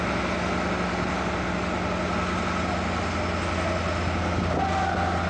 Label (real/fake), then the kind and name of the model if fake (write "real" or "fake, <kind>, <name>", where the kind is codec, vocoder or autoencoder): real